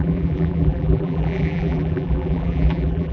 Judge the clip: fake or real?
fake